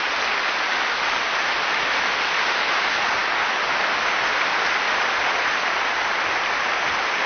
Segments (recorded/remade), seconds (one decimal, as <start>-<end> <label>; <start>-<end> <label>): 0.0-7.3 recorded